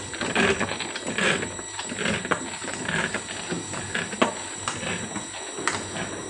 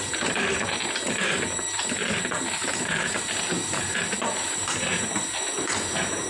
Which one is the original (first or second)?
first